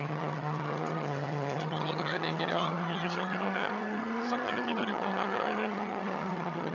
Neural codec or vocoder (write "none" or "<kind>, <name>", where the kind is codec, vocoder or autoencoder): vocoder, HiFi-GAN